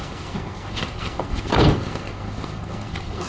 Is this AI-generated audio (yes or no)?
yes